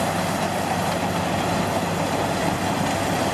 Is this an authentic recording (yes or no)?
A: yes